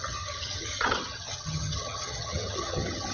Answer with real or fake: fake